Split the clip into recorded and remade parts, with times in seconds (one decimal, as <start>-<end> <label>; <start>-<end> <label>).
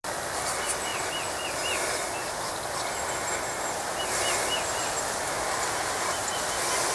0.0-6.9 recorded